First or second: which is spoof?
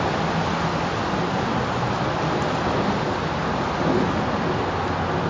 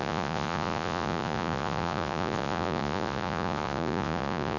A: second